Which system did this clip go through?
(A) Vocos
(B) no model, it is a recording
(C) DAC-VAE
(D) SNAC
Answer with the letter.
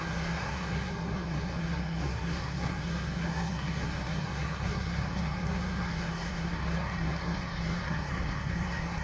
D